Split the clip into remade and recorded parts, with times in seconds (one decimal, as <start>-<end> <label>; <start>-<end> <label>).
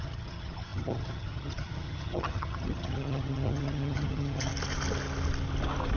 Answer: 0.0-4.5 remade; 4.5-6.0 recorded